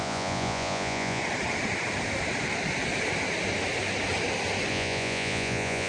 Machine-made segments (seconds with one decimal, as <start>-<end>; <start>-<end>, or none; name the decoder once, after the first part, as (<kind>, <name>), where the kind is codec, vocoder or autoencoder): 0.0-1.2 (vocoder, Vocos); 4.7-5.9